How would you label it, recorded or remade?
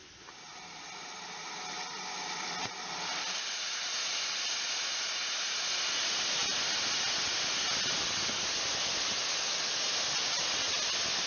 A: recorded